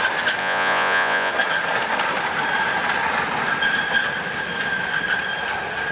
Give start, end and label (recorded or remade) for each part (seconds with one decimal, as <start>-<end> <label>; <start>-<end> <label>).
0.0-0.4 recorded; 0.4-1.3 remade; 1.3-5.9 recorded